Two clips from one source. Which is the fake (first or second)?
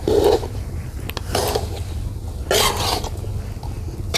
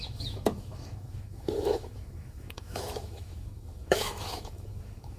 second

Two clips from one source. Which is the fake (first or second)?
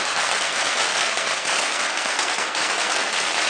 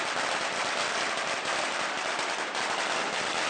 first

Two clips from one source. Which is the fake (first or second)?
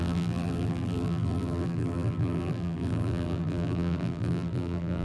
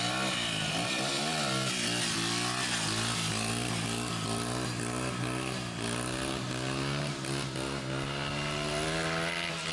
first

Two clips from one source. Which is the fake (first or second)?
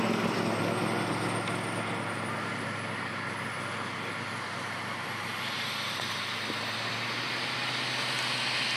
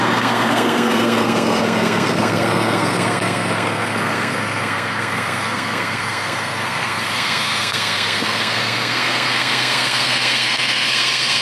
second